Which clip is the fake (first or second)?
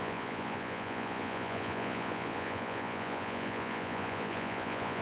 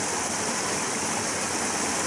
first